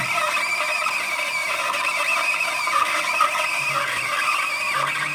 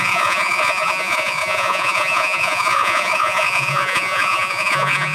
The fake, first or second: second